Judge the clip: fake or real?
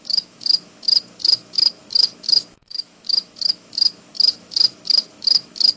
fake